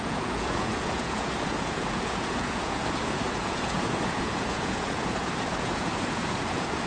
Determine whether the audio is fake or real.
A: fake